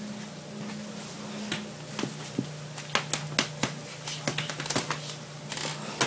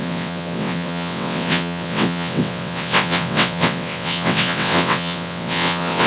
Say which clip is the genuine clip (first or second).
first